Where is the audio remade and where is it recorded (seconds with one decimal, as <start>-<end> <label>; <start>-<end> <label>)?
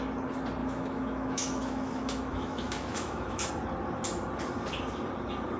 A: 0.0-0.6 recorded; 0.6-3.5 remade; 3.5-5.6 recorded